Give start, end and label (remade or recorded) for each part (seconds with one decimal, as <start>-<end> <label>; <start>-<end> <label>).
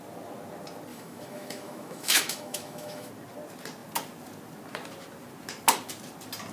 0.0-0.9 recorded; 0.9-3.1 remade; 3.1-6.5 recorded